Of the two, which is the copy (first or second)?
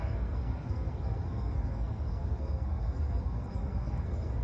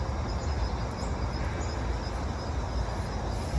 first